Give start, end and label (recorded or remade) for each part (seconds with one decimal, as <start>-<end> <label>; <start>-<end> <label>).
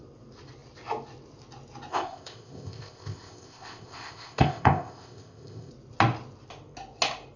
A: 0.0-1.9 recorded; 1.9-5.7 remade; 5.7-7.4 recorded